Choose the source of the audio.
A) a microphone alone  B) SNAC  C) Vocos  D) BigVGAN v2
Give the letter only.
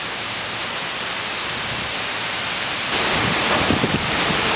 A